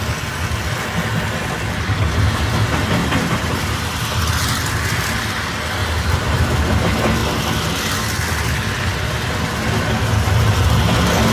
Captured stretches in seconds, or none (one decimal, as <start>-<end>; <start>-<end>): 0.0-3.0; 4.0-5.8; 6.8-11.3